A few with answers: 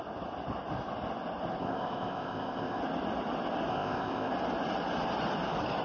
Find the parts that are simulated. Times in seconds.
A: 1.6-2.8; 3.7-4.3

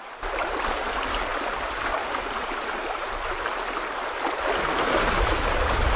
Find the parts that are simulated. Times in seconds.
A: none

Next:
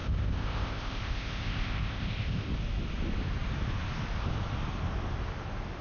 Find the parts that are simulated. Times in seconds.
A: 0.0-2.5

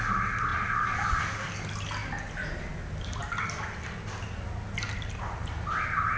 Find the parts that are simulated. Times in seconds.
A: none

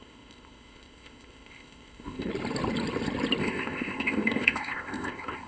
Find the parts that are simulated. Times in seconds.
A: 0.0-2.3; 3.4-5.5

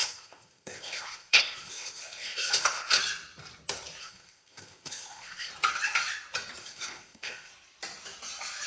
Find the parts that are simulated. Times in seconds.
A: 0.0-3.0; 4.0-5.5; 6.6-7.5

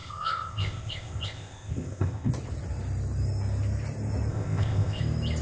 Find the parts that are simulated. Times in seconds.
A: 0.0-2.3; 4.3-5.0